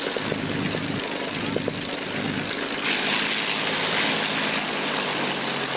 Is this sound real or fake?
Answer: real